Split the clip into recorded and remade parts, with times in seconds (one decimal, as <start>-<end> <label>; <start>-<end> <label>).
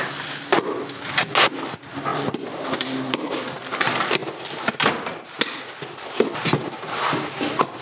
0.0-2.1 recorded; 2.1-3.6 remade; 3.6-7.8 recorded